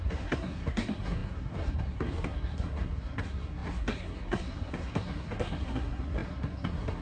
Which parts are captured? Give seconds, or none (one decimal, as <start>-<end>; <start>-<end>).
none